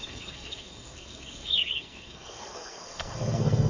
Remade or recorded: remade